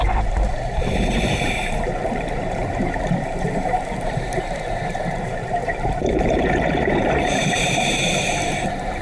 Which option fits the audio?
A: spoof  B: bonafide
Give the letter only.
A